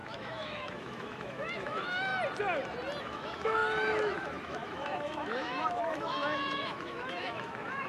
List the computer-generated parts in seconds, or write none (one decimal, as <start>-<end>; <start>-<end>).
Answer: 0.0-2.1; 3.0-7.9